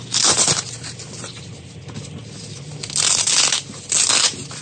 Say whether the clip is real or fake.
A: real